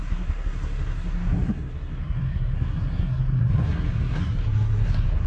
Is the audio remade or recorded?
remade